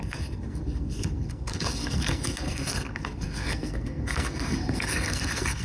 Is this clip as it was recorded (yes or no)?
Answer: no